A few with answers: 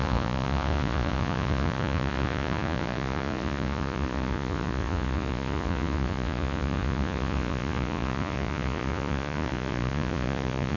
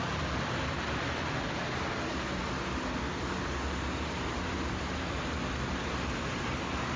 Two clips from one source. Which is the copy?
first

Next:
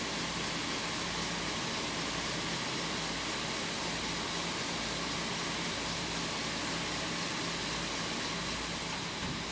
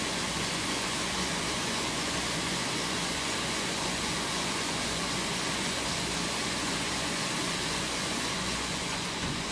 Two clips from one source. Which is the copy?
second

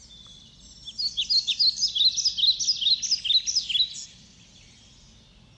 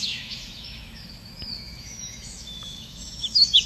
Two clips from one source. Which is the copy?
second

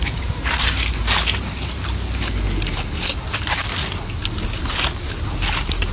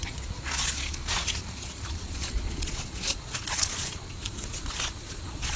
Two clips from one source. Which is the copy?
second